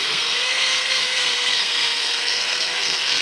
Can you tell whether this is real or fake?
fake